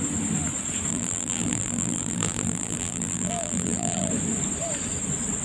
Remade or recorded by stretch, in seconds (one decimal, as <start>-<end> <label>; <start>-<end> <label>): 0.0-0.9 recorded; 0.9-4.1 remade; 4.1-5.4 recorded